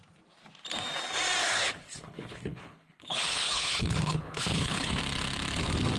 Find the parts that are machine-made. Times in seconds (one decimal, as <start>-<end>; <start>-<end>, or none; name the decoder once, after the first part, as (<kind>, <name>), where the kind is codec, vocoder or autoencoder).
1.4-5.0 (codec, HILCodec)